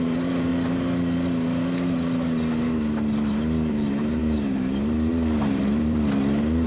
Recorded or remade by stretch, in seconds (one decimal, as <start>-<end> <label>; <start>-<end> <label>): 0.0-0.5 remade; 0.5-3.7 recorded; 3.7-6.7 remade